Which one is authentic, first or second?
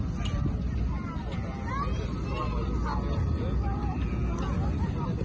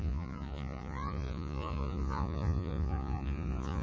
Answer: first